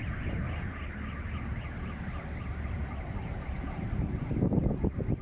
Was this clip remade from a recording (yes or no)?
no